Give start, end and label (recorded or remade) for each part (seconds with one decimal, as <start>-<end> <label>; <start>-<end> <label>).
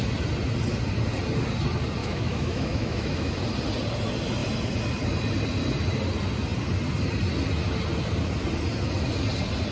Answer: 0.0-2.0 recorded; 2.0-3.3 remade; 3.3-9.7 recorded